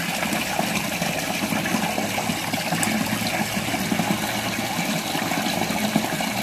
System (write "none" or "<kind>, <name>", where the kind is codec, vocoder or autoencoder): none